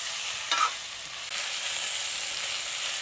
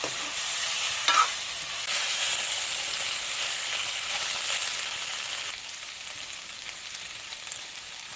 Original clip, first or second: first